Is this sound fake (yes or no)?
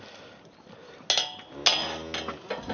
no